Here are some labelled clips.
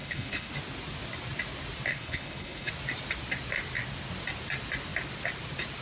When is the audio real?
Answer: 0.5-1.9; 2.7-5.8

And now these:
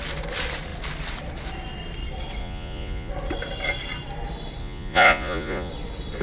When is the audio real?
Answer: 0.0-2.4; 3.1-4.6; 5.7-6.2

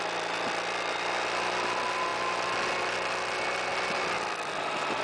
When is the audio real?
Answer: 0.0-5.0